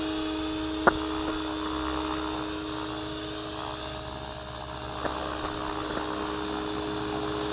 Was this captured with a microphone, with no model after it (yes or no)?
yes